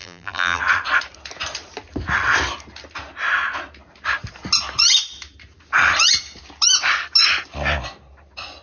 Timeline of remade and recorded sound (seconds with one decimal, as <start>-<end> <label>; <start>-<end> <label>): 0.0-0.6 remade; 0.6-8.6 recorded